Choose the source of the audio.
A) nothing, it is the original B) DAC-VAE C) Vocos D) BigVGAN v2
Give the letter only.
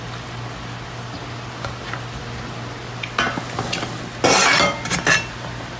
A